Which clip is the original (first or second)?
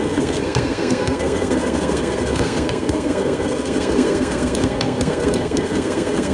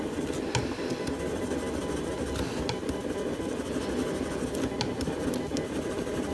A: second